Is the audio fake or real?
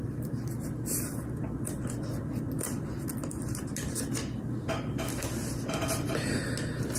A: real